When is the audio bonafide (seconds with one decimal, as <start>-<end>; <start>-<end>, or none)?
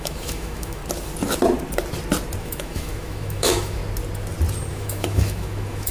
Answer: 0.8-2.4; 3.8-4.7